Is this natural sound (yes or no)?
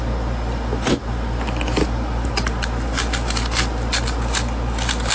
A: yes